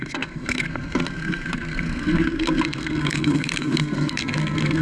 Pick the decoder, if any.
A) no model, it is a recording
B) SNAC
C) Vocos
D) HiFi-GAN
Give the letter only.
B